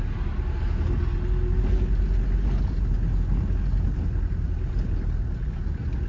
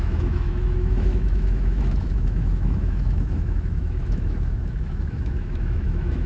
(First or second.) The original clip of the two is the first